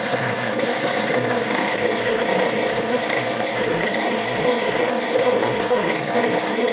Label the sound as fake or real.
fake